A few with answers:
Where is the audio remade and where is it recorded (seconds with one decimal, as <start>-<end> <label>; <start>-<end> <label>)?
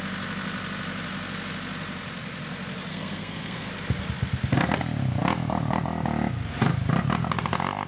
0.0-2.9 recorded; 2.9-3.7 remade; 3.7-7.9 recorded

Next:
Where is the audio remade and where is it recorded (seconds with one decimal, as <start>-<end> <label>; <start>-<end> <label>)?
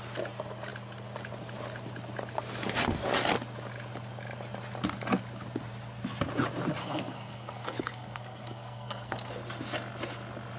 0.0-6.8 recorded; 6.8-9.3 remade; 9.3-10.6 recorded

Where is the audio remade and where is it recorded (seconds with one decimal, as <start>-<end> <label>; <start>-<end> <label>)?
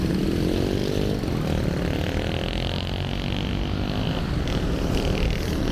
0.0-5.7 recorded